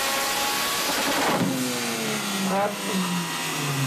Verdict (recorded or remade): recorded